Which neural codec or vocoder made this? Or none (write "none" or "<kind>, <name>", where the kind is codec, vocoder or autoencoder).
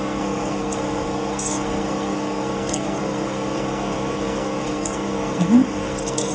codec, SNAC